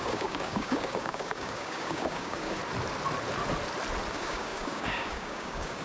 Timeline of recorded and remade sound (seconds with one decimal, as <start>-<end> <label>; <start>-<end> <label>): 0.0-2.6 remade; 2.6-4.1 recorded; 4.1-5.8 remade